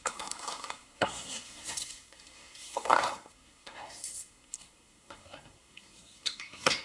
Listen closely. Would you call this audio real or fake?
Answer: fake